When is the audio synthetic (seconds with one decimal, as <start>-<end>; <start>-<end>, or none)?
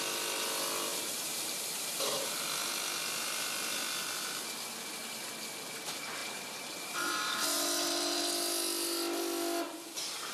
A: 0.9-2.0; 6.2-8.2